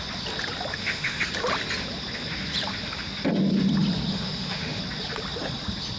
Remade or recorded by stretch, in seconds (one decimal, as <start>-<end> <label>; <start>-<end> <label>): 0.0-0.7 recorded; 0.7-1.2 remade; 1.2-4.1 recorded; 4.1-4.8 remade; 4.8-6.0 recorded